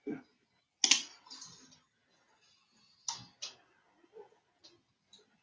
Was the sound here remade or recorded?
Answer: recorded